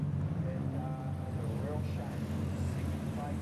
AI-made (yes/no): no